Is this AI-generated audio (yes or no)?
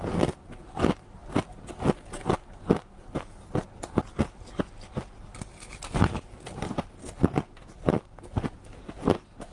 no